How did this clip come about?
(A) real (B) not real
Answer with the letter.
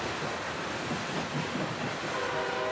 A